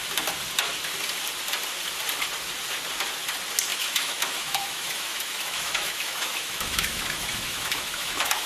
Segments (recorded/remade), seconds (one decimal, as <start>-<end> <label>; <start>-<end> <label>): 0.0-3.7 recorded; 3.7-8.5 remade